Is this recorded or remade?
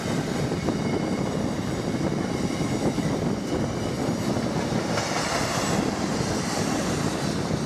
recorded